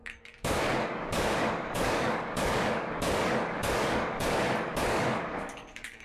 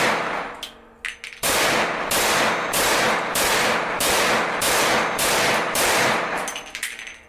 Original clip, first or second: second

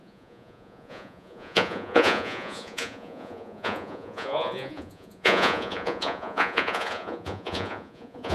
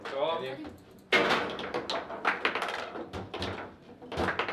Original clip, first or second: second